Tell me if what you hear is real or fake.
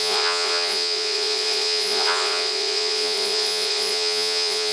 fake